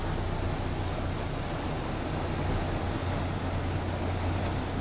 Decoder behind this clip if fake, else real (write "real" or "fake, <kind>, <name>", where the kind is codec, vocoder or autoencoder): real